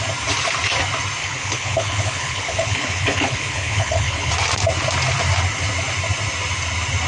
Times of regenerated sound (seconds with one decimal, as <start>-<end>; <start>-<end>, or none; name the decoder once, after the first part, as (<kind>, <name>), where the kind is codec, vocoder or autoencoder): 1.2-4.3 (codec, HILCodec)